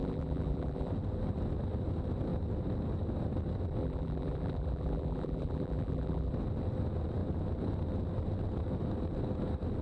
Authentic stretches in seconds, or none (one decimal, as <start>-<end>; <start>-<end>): 0.9-3.8; 6.3-9.8